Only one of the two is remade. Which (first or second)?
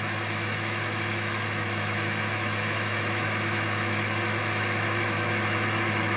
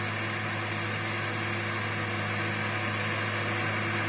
first